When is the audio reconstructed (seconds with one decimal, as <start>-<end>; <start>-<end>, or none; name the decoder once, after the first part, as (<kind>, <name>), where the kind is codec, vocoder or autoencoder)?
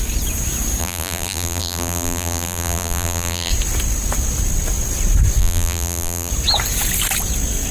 0.8-3.5 (vocoder, BigVGAN v2); 5.4-6.3